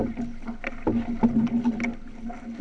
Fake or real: real